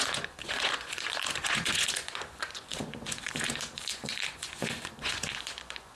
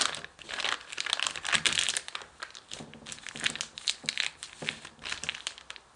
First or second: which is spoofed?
first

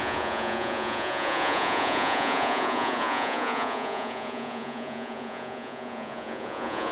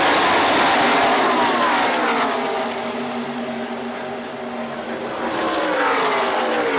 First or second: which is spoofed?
first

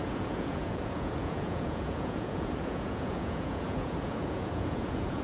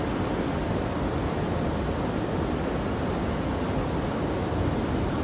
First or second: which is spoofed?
first